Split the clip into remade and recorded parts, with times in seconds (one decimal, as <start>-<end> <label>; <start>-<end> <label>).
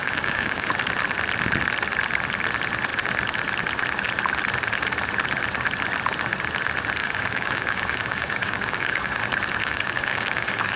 0.0-0.7 remade; 0.7-7.0 recorded; 7.0-9.2 remade; 9.2-9.6 recorded; 9.6-10.8 remade